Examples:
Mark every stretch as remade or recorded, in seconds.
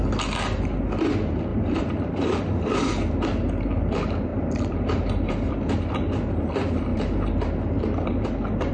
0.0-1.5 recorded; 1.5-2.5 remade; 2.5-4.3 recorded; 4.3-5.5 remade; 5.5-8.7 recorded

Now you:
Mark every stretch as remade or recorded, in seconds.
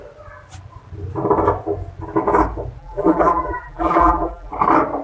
0.0-2.8 recorded; 2.8-4.5 remade; 4.5-5.0 recorded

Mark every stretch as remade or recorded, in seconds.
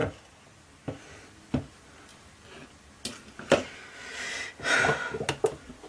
0.0-1.0 remade; 1.0-5.9 recorded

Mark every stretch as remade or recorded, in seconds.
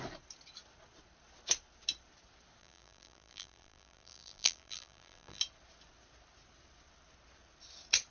0.0-2.6 recorded; 2.6-5.4 remade; 5.4-8.1 recorded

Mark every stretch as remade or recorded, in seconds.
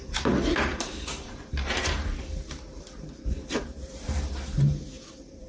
0.0-5.5 remade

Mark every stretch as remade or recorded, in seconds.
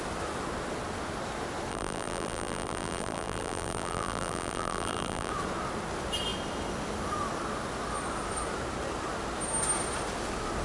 0.0-1.7 recorded; 1.7-5.3 remade; 5.3-10.6 recorded